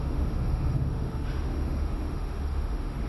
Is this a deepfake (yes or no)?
yes